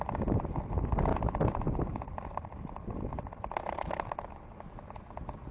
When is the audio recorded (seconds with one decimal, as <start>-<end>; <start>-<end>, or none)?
0.0-5.5